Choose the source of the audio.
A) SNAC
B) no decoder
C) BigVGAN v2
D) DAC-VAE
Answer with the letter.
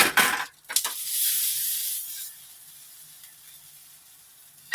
B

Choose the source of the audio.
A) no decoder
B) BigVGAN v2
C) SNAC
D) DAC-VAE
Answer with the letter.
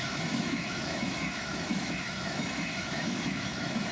D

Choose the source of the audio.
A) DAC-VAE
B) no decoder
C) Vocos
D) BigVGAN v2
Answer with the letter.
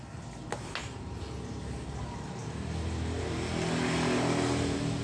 B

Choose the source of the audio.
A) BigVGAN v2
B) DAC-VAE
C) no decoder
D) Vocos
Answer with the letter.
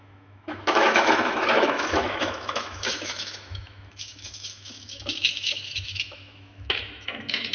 B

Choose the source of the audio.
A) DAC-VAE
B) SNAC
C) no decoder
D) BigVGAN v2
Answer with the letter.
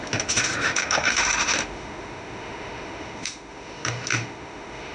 A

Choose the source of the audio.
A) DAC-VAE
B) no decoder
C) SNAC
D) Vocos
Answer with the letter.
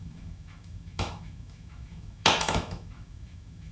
A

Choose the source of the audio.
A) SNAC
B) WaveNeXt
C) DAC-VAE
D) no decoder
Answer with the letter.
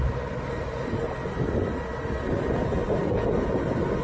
D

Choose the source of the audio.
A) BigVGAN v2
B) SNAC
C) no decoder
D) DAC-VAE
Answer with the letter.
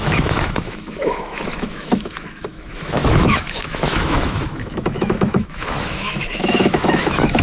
D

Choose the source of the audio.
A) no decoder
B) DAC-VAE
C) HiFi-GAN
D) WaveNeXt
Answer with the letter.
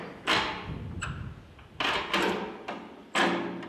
A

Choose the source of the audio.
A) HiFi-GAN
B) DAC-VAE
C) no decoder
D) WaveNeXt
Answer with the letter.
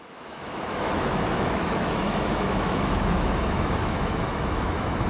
B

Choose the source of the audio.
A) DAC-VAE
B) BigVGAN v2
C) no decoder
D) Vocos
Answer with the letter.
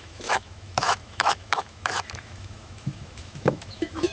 A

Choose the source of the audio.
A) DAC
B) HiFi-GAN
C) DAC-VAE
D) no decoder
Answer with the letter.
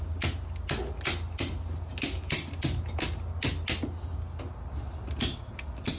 D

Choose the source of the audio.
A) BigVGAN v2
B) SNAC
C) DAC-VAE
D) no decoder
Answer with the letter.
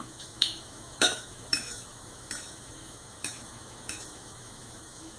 C